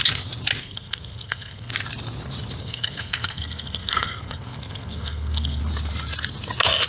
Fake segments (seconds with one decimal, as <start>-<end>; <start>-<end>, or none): 0.6-1.7; 2.6-5.6